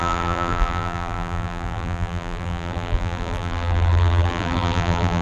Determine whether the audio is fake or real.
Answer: fake